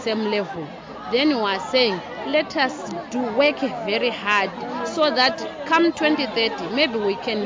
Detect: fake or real real